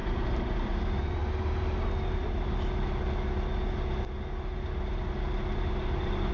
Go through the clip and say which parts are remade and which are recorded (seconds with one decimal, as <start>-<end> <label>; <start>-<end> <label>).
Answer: 0.0-6.3 recorded